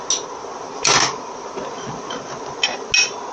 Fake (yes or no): no